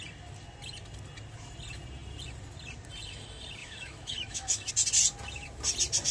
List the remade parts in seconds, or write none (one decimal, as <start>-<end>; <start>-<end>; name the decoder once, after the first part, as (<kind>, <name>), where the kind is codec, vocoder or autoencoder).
3.6-4.7 (autoencoder, DAC-VAE)